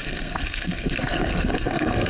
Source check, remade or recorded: remade